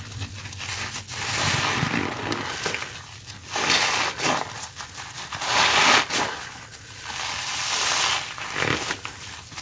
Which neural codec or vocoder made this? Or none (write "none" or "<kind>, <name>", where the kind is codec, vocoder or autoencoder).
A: none